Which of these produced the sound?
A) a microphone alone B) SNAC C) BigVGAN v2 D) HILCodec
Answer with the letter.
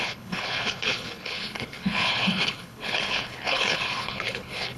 D